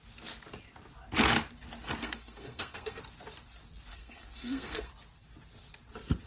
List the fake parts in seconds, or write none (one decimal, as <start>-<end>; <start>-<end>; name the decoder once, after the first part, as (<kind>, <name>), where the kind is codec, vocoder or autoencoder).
2.0-3.0 (codec, SNAC); 3.9-4.9